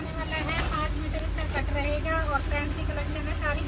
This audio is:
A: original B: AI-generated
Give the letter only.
A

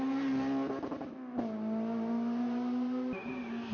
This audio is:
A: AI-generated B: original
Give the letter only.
B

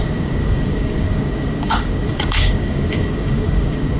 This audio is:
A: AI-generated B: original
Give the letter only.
A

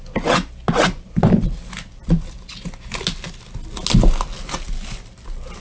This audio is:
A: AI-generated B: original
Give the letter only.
B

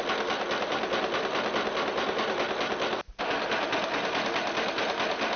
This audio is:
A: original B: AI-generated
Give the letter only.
A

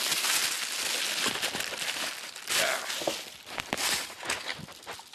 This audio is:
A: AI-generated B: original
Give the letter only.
B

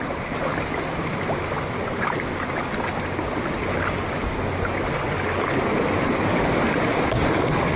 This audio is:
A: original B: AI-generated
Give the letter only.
A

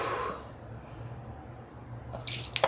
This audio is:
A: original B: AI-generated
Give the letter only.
A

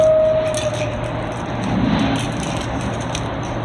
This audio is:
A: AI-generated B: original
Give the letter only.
B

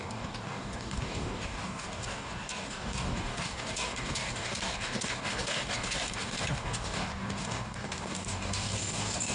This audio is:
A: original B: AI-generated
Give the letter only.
B